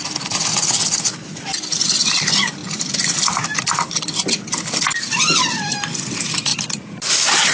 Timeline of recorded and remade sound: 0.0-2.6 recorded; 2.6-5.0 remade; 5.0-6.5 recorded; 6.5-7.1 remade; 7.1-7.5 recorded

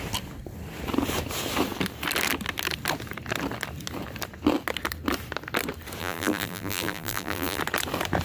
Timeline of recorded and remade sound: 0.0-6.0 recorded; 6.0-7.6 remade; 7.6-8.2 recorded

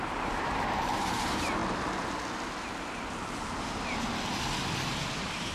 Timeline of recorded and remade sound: 0.0-1.6 remade; 1.6-4.9 recorded; 4.9-5.5 remade

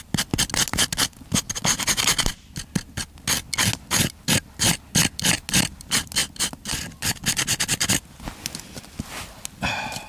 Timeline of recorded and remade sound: 0.0-6.2 recorded; 6.2-8.0 remade; 8.0-10.1 recorded